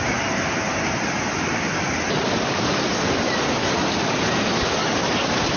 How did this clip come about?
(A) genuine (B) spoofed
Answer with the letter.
A